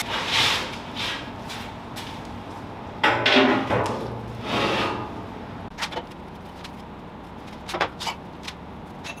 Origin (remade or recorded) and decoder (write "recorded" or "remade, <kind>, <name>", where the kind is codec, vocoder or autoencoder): recorded